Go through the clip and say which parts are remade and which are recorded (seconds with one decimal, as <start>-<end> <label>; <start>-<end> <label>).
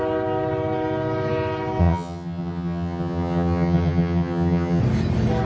0.0-1.8 recorded; 1.8-4.8 remade; 4.8-5.4 recorded